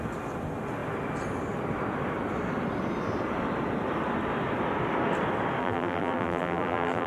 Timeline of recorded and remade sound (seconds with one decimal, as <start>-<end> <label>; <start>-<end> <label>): 0.0-5.6 recorded; 5.6-7.1 remade